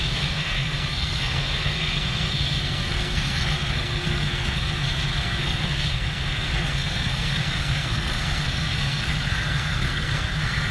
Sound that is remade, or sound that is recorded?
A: remade